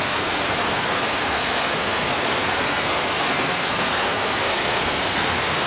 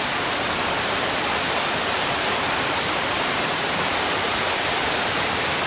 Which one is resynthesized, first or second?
first